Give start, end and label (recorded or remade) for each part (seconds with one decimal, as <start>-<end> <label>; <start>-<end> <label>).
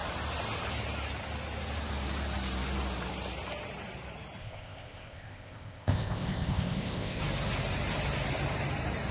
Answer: 0.0-4.4 recorded; 4.4-7.2 remade; 7.2-9.1 recorded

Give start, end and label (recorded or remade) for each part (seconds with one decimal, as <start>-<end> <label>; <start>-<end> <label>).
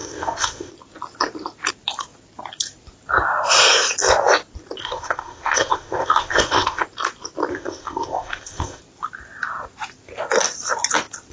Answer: 0.0-0.7 remade; 0.7-4.8 recorded; 4.8-6.8 remade; 6.8-7.5 recorded; 7.5-8.8 remade; 8.8-11.3 recorded